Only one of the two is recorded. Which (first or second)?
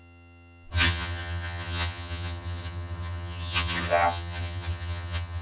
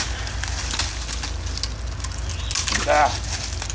second